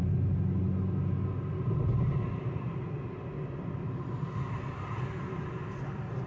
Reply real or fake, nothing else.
real